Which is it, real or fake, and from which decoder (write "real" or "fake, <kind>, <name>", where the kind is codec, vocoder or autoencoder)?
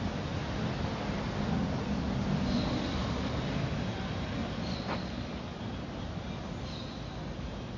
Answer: real